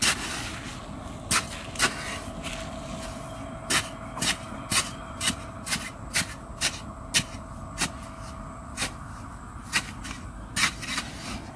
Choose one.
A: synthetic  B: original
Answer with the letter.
B